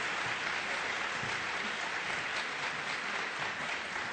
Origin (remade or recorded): recorded